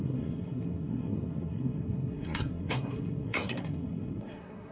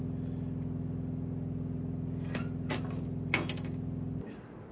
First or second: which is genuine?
second